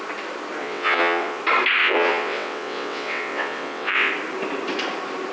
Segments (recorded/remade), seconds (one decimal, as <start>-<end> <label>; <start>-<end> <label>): 0.0-0.6 recorded; 0.6-1.4 remade; 1.4-1.8 recorded; 1.8-4.1 remade; 4.1-5.3 recorded